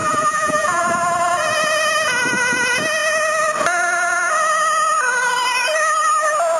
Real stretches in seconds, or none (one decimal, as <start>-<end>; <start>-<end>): 0.8-6.6